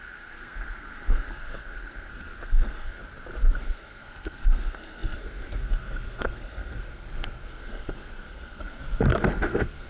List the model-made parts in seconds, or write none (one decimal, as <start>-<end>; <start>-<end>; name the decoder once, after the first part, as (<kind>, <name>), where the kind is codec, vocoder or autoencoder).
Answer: 0.0-3.0 (codec, SNAC); 3.6-8.8; 9.3-9.9